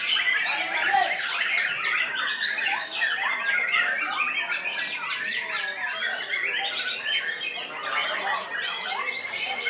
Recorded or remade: recorded